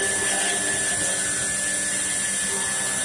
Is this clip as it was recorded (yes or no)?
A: yes